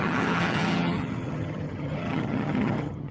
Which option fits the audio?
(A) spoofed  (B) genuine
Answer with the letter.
A